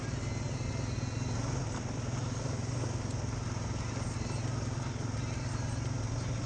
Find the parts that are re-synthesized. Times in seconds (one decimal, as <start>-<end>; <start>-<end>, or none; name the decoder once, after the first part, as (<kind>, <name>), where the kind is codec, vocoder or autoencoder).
none